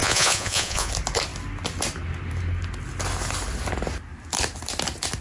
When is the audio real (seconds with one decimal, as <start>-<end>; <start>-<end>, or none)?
0.9-5.2